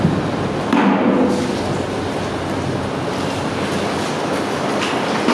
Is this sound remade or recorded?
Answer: recorded